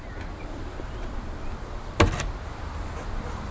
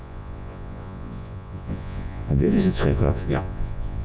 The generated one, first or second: second